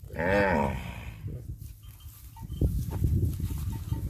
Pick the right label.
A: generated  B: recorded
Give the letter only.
B